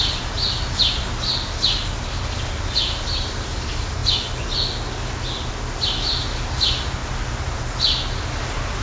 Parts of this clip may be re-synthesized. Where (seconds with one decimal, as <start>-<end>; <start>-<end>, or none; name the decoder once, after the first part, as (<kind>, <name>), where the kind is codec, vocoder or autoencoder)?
none